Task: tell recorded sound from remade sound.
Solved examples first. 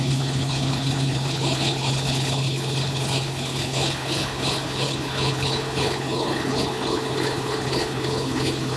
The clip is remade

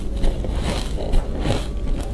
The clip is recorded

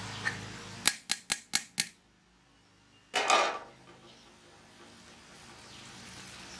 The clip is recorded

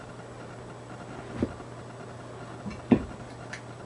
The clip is recorded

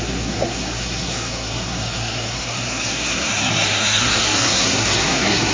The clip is remade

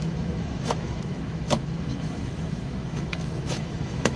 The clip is remade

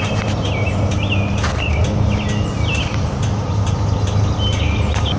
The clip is recorded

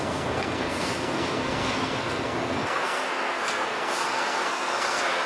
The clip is remade